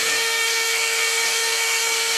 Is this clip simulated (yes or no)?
yes